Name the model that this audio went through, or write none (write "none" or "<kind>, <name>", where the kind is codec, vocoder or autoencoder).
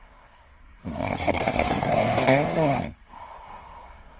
codec, SNAC